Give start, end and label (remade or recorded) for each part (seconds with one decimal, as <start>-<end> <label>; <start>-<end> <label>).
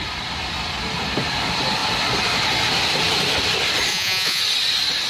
0.0-3.9 recorded; 3.9-4.4 remade; 4.4-5.1 recorded